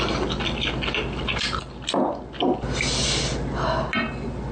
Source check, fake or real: real